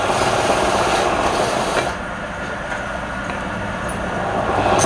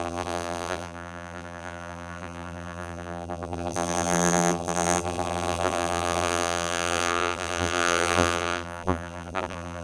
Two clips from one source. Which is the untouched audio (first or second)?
first